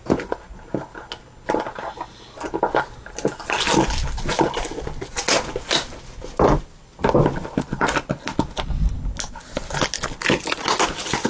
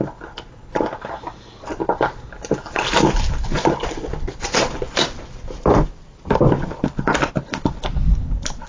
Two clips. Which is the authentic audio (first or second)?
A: first